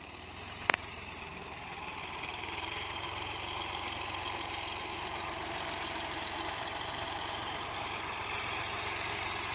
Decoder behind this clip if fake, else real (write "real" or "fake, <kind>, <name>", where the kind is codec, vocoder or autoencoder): fake, vocoder, BigVGAN v2